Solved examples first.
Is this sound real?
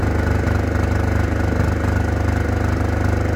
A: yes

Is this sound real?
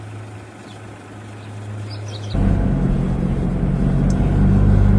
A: yes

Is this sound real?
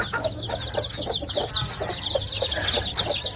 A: yes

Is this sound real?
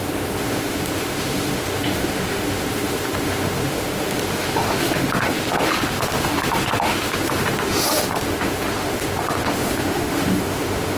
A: no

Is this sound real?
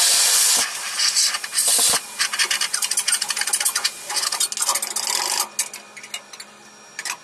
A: yes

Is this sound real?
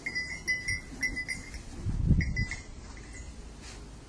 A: yes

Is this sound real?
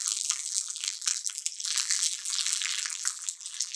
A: no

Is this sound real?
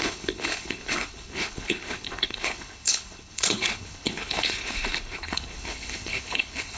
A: no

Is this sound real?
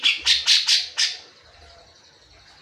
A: yes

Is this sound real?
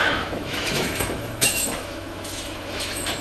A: no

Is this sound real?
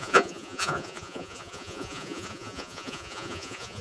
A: no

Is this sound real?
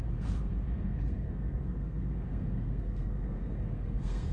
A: no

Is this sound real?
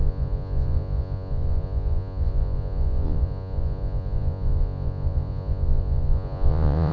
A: no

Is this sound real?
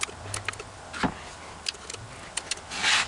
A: yes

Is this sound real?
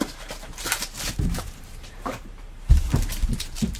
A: no